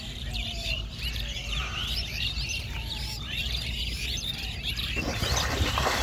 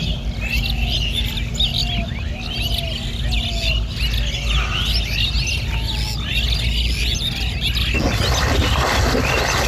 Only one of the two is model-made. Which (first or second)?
first